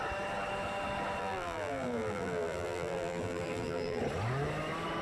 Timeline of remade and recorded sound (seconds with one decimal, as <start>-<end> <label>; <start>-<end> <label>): 0.0-1.2 recorded; 1.2-4.0 remade; 4.0-5.0 recorded